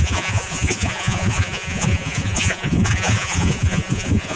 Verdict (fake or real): fake